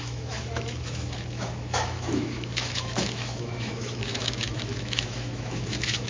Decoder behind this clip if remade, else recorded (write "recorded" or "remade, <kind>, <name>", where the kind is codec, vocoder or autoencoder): remade, autoencoder, DAC-VAE